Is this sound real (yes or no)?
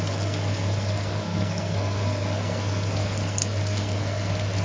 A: no